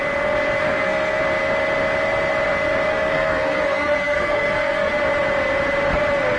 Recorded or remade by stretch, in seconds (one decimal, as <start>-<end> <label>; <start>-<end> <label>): 0.0-0.6 recorded; 0.6-1.2 remade; 1.2-2.9 recorded; 2.9-4.9 remade; 4.9-6.4 recorded